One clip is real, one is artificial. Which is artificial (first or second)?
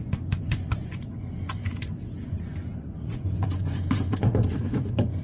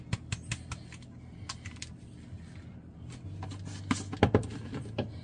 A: first